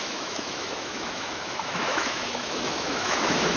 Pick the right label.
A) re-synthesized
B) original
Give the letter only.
A